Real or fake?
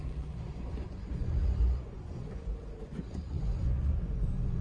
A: fake